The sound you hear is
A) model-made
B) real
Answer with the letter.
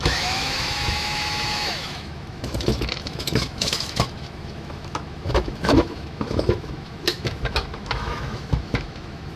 A